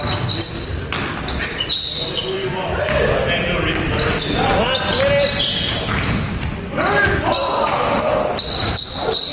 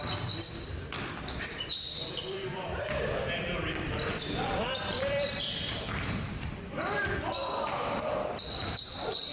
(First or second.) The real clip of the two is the first